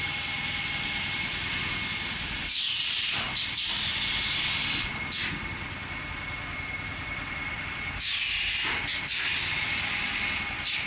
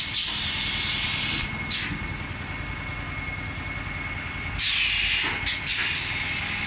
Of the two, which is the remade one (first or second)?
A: first